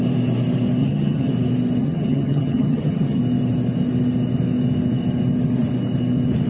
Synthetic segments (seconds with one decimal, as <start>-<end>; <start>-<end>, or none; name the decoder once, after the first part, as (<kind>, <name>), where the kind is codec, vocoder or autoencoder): 0.8-1.3 (vocoder, HiFi-GAN); 1.8-3.2